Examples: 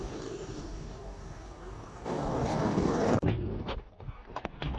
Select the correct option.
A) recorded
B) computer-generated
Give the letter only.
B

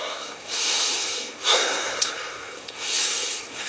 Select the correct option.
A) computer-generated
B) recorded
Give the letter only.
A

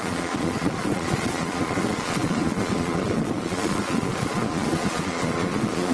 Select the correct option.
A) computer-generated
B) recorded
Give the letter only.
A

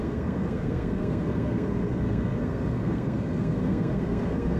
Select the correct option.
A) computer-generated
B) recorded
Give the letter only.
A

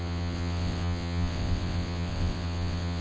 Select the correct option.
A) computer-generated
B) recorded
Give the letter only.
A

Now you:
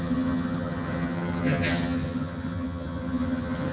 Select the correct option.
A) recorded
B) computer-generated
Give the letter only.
B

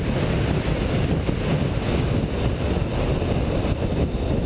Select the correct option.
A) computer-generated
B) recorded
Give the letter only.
B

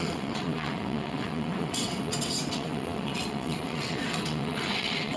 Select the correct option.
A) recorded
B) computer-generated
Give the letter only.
B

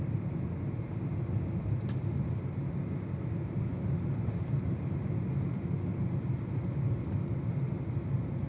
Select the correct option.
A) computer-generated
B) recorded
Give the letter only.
B